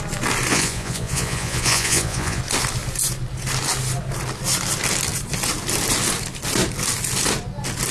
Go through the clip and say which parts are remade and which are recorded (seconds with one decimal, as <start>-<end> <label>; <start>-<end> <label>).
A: 0.0-0.5 recorded; 0.5-2.4 remade; 2.4-7.9 recorded